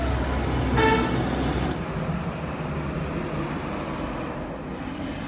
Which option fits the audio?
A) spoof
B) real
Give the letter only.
B